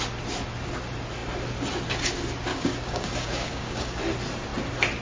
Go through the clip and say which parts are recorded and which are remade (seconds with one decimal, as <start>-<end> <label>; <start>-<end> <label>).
0.0-2.5 recorded; 2.5-4.0 remade; 4.0-5.0 recorded